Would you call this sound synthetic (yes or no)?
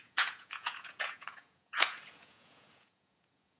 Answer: yes